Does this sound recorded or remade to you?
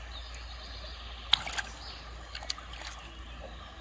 recorded